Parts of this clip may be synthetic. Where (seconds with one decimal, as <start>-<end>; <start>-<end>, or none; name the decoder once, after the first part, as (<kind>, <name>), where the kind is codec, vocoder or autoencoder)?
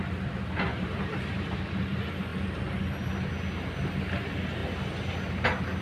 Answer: 0.7-1.6 (vocoder, BigVGAN v2)